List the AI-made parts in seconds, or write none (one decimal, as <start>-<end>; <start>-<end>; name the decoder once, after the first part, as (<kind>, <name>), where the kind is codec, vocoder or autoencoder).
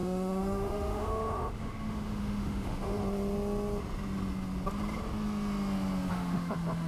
0.0-3.0 (autoencoder, DAC-VAE); 6.1-6.9